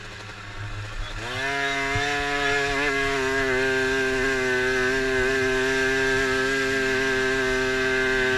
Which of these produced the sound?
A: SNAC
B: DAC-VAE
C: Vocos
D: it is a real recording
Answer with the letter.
D